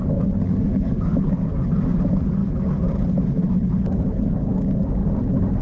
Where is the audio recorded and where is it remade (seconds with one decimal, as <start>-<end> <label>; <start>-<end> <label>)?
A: 0.0-2.4 remade; 2.4-4.1 recorded; 4.1-5.0 remade; 5.0-5.6 recorded